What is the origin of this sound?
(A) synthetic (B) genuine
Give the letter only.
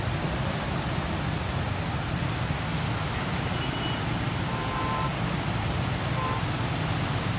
B